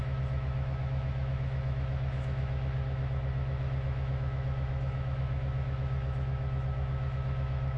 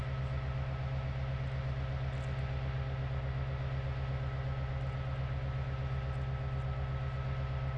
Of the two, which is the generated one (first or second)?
first